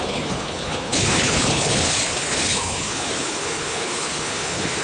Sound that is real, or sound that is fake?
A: fake